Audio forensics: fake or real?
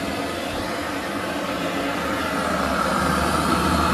real